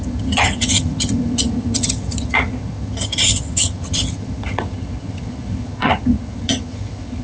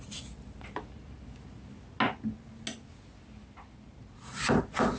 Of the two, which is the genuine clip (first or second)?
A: second